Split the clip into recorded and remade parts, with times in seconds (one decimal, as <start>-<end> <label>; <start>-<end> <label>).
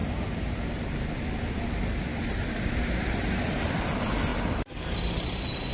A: 0.0-0.8 remade; 0.8-2.1 recorded; 2.1-3.8 remade; 3.8-4.3 recorded; 4.3-5.1 remade; 5.1-5.7 recorded